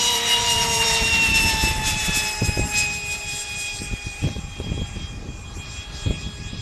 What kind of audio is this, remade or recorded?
remade